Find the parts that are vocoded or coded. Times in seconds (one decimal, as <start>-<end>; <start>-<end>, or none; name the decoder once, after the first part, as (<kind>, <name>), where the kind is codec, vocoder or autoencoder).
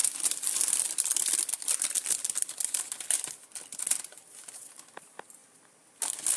3.8-6.4 (vocoder, BigVGAN v2)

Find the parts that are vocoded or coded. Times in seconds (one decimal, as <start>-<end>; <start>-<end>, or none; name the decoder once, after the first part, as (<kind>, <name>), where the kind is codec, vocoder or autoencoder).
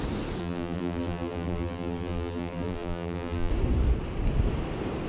0.4-3.5 (vocoder, BigVGAN v2)